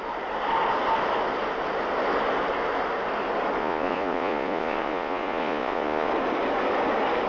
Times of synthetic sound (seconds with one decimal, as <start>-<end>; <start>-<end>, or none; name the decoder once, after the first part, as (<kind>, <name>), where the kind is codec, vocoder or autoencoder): 3.6-6.1 (vocoder, Vocos)